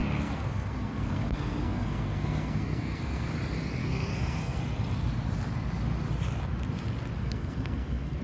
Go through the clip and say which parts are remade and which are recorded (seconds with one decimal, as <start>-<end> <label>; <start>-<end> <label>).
0.0-3.3 remade; 3.3-3.8 recorded; 3.8-4.6 remade; 4.6-7.2 recorded; 7.2-8.2 remade